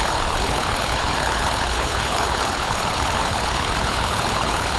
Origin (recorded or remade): remade